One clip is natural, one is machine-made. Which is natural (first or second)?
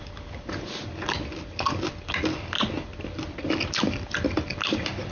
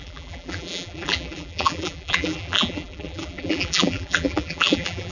first